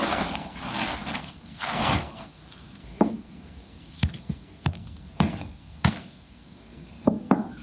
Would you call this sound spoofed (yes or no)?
yes